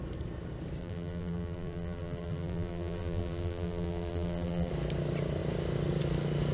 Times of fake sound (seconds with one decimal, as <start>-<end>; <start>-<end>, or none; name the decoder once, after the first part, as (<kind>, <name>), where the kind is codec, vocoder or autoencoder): 0.8-4.7 (vocoder, BigVGAN v2)